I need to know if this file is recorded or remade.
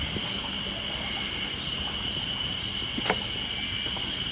recorded